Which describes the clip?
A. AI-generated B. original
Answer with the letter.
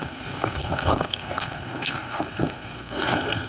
A